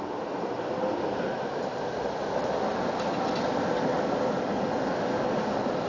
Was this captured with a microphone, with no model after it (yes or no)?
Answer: yes